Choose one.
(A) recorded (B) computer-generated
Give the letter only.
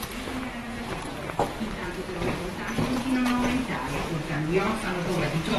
A